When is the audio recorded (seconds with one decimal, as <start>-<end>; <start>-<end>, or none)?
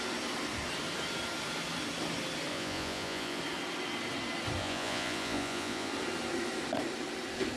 0.0-2.5; 3.4-4.6; 5.9-7.6